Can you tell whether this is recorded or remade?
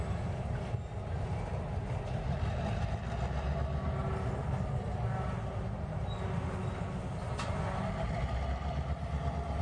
recorded